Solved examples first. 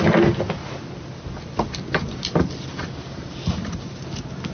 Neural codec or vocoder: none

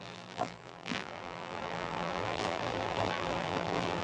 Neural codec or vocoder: vocoder, BigVGAN v2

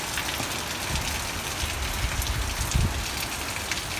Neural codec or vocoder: none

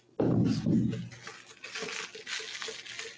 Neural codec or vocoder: none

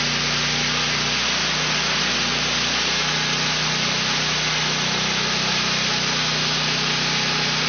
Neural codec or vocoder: none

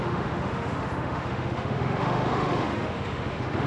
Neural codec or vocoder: autoencoder, DAC-VAE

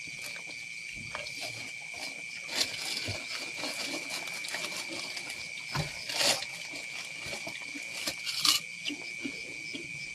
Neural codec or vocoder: none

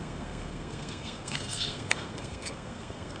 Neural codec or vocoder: codec, SNAC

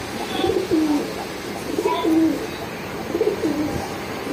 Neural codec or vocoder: none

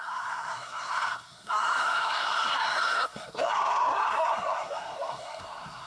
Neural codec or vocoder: codec, SNAC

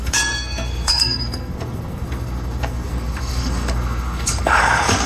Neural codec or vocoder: codec, SNAC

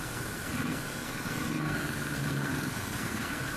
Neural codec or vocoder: codec, SNAC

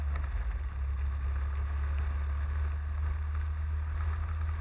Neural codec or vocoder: none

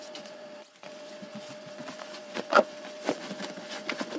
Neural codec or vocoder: vocoder, Vocos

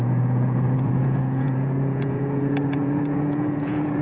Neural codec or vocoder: vocoder, Vocos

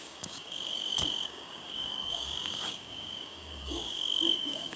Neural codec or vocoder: codec, DAC